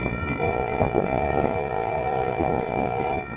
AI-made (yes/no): yes